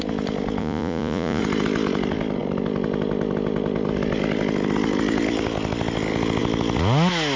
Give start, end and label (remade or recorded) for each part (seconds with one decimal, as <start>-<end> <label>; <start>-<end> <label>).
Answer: 0.0-0.6 recorded; 0.6-1.4 remade; 1.4-7.4 recorded